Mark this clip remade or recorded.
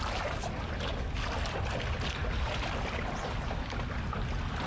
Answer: recorded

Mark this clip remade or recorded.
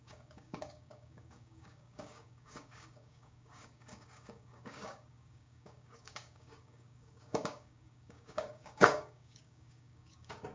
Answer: remade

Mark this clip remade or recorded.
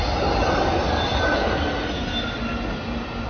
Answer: recorded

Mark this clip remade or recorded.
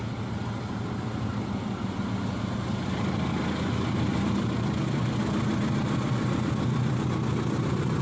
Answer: recorded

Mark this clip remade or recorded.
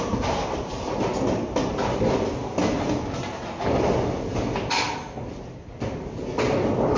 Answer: recorded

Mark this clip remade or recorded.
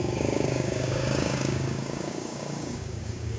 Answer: remade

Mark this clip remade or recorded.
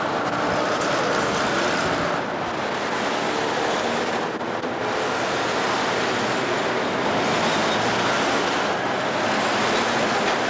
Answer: recorded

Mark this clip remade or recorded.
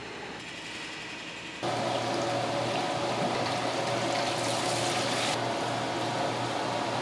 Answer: recorded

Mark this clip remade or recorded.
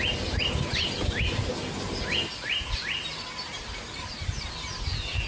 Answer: recorded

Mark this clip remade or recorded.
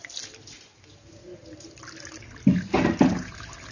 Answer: recorded